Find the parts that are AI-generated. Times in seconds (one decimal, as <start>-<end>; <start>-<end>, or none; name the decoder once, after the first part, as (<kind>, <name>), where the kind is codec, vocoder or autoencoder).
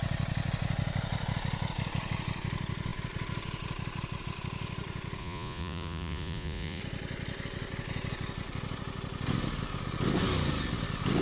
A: 5.2-6.8 (vocoder, Vocos)